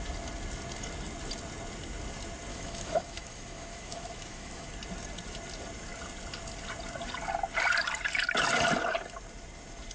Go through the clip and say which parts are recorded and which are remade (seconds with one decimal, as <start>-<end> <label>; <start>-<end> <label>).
0.0-2.5 recorded; 2.5-4.7 remade; 4.7-9.9 recorded

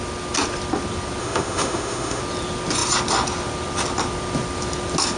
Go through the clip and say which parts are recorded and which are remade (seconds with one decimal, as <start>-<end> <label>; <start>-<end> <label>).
0.0-1.2 recorded; 1.2-2.2 remade; 2.2-5.2 recorded